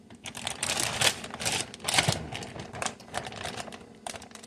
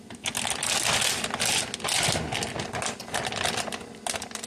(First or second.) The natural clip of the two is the second